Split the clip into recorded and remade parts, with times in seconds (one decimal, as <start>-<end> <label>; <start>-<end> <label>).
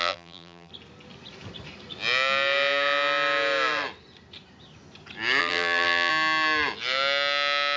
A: 0.0-0.7 remade; 0.7-5.4 recorded; 5.4-6.1 remade; 6.1-7.8 recorded